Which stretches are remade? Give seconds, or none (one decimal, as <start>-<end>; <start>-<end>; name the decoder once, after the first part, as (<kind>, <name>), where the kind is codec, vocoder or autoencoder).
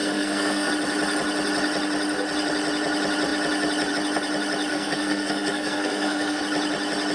0.0-0.7 (codec, SNAC); 4.7-6.4